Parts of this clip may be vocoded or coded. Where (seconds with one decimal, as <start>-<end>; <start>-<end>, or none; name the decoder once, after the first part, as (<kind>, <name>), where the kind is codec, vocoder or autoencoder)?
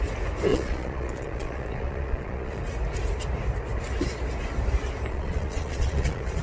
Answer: 0.5-2.6 (vocoder, Vocos); 5.1-6.4